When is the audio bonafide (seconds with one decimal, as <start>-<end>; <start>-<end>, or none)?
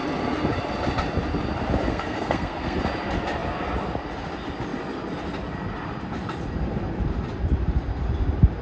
0.0-1.9; 2.8-8.6